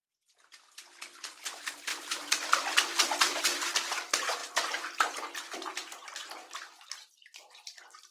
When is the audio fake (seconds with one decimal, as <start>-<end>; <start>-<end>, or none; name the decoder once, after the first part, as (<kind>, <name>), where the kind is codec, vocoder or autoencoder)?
1.9-3.9 (vocoder, BigVGAN v2); 6.4-8.1